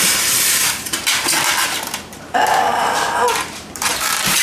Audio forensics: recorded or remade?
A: remade